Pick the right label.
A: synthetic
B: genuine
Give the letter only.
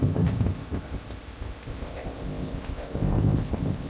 A